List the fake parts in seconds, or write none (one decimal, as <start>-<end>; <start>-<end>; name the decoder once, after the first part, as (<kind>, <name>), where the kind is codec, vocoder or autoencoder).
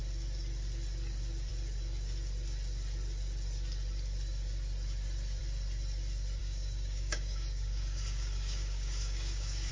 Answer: 6.4-9.7 (codec, DAC)